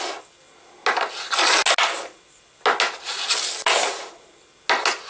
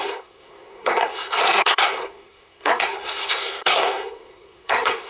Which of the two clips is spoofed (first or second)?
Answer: second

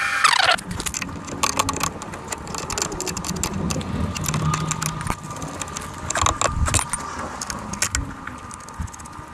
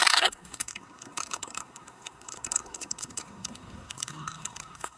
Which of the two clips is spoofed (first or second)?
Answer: second